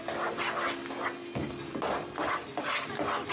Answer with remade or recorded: recorded